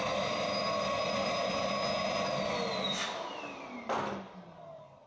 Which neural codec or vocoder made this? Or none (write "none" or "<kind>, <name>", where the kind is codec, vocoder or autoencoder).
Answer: none